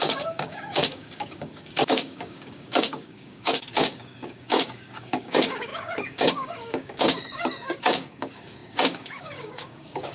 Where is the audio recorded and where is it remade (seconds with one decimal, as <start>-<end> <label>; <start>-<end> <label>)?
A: 0.0-10.1 remade